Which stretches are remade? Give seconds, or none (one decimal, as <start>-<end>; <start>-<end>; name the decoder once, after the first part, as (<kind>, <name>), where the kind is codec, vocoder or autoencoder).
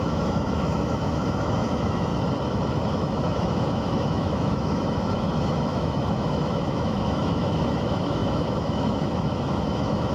0.0-2.1 (autoencoder, DAC-VAE); 2.7-10.1